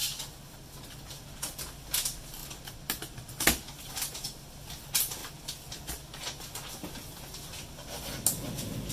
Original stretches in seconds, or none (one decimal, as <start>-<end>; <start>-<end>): 0.0-8.9